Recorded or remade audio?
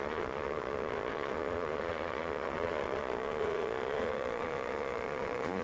remade